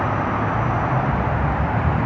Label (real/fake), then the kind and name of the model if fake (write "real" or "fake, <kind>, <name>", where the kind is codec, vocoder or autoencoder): real